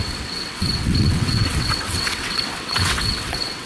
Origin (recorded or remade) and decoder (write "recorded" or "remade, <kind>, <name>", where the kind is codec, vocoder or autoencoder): remade, vocoder, WaveNeXt